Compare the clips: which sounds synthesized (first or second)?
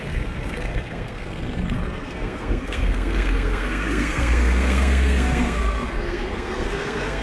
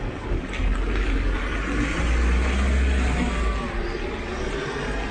first